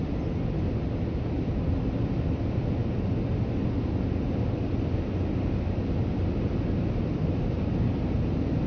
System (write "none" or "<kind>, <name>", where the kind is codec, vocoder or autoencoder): none